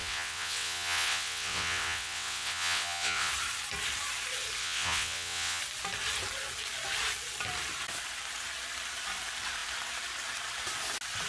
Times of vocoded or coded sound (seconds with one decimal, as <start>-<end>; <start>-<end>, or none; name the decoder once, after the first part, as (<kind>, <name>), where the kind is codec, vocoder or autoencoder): 0.0-3.3 (vocoder, WaveNeXt); 4.6-5.6